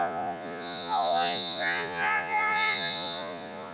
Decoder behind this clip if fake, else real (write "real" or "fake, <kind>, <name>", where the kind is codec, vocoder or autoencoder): fake, vocoder, Vocos